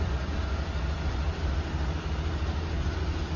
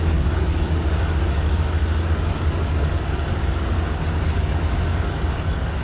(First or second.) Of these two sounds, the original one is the first